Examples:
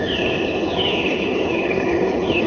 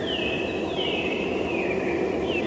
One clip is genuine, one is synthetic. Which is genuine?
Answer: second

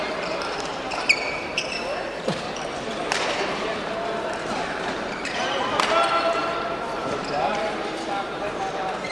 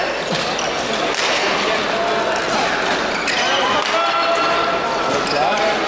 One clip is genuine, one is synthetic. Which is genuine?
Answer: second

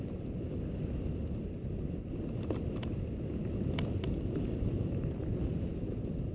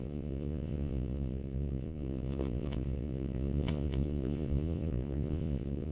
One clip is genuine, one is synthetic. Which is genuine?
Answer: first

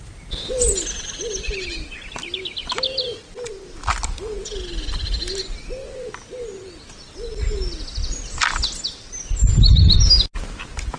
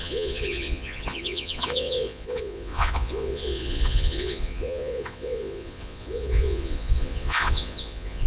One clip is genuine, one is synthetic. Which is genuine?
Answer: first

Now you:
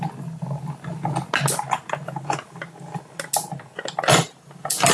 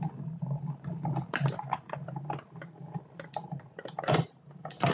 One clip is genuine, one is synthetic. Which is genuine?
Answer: first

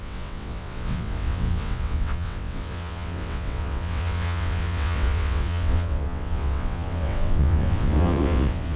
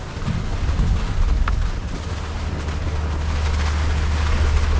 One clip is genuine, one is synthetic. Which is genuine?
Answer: second